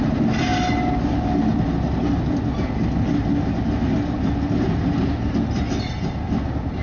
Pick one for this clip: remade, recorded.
recorded